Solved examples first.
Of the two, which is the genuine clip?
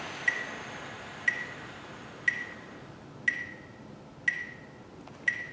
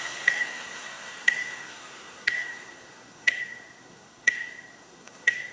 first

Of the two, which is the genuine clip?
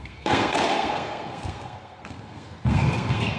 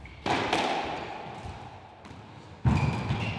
second